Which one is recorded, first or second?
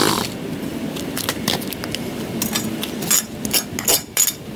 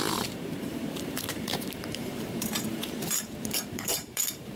first